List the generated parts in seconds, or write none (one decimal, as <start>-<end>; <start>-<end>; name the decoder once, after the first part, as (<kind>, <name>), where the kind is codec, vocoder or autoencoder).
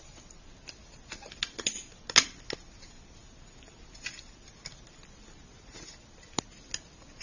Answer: none